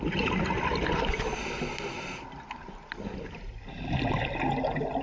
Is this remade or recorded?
recorded